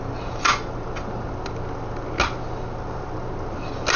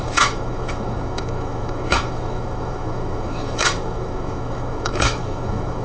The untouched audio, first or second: first